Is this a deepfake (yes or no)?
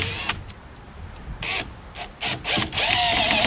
no